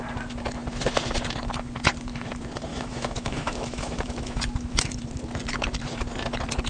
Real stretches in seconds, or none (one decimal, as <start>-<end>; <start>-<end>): 0.0-2.7; 4.4-6.7